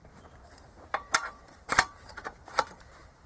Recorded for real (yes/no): no